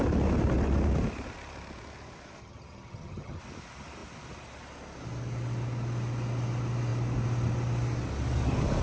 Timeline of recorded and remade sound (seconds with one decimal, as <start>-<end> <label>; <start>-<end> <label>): 0.0-2.4 recorded; 2.4-3.4 remade; 3.4-8.8 recorded